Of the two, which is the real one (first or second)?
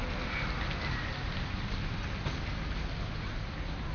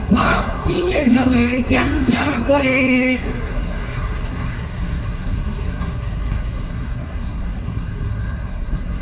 first